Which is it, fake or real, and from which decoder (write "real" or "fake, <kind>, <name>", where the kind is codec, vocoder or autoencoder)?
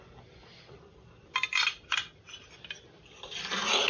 real